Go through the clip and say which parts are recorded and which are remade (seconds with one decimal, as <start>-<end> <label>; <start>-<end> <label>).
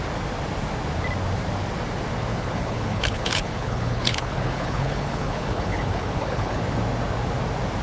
0.0-2.3 recorded; 2.3-6.6 remade; 6.6-7.8 recorded